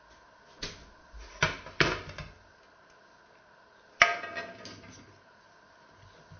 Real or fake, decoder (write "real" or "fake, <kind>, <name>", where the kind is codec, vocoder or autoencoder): real